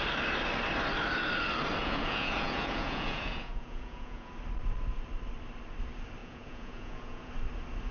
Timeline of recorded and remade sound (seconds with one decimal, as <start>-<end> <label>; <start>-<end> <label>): 0.0-1.8 recorded; 1.8-4.3 remade; 4.3-6.2 recorded; 6.2-7.3 remade; 7.3-7.9 recorded